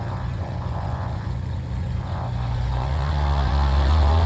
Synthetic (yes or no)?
yes